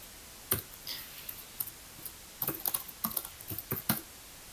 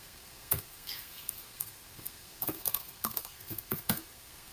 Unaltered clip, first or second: first